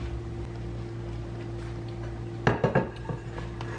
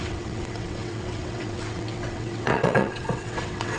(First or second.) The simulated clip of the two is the second